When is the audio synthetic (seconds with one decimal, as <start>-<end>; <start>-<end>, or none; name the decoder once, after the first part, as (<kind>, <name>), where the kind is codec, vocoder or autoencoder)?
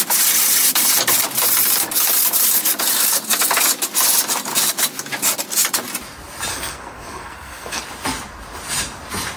6.5-7.8 (codec, SNAC)